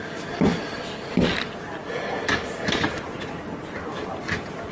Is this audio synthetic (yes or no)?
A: no